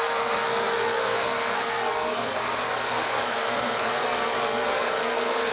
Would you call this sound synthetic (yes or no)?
yes